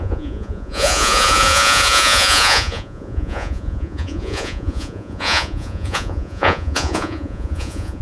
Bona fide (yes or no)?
no